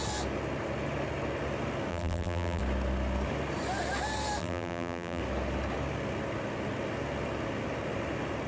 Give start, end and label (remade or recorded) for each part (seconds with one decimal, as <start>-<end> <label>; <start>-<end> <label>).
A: 0.0-1.9 recorded; 1.9-2.6 remade; 2.6-4.4 recorded; 4.4-5.2 remade; 5.2-8.5 recorded